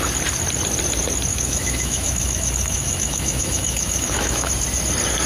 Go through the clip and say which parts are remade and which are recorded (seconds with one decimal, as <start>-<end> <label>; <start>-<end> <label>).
0.0-1.3 recorded; 1.3-4.5 remade; 4.5-5.3 recorded